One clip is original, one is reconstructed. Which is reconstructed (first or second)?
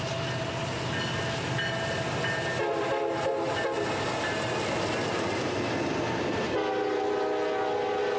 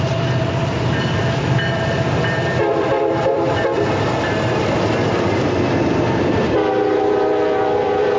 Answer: second